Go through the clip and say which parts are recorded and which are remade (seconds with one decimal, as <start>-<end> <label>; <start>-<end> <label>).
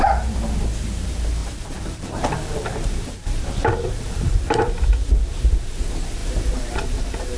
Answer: 0.0-1.4 recorded; 1.4-5.6 remade; 5.6-6.2 recorded; 6.2-7.0 remade; 7.0-7.4 recorded